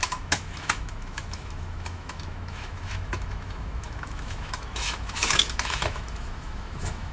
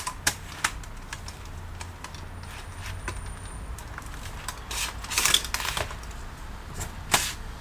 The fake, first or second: first